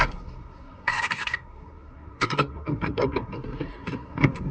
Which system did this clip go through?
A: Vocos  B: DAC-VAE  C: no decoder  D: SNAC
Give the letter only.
D